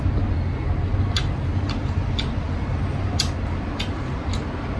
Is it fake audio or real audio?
real